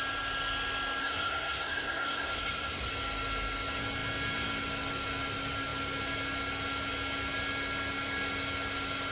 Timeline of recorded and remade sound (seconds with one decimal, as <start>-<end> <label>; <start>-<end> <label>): 0.0-1.0 recorded; 1.0-2.9 remade; 2.9-9.1 recorded